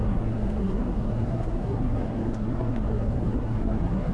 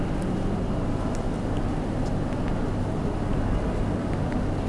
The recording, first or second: second